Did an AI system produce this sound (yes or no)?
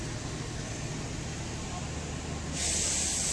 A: no